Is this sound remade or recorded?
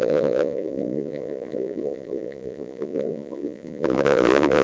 remade